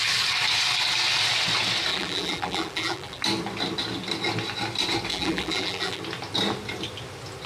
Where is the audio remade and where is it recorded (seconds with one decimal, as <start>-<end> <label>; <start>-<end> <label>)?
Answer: 0.0-1.9 recorded; 1.9-3.2 remade; 3.2-5.1 recorded; 5.1-6.0 remade; 6.0-7.5 recorded